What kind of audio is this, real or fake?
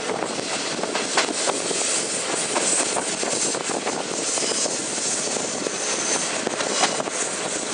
real